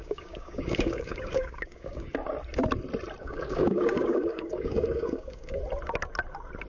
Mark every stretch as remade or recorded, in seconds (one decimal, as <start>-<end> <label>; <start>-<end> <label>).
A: 0.0-2.1 remade; 2.1-3.2 recorded; 3.2-5.6 remade; 5.6-6.7 recorded